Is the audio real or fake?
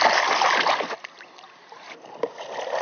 real